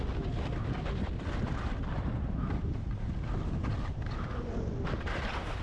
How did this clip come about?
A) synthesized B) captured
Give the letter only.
B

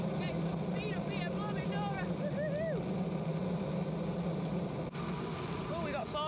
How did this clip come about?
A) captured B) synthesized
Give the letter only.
A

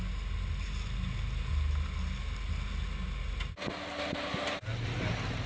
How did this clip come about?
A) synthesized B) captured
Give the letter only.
B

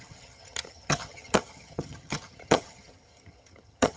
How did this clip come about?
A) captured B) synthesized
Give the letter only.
B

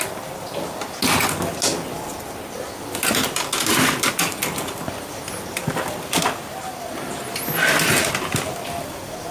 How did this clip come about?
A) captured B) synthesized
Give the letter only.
A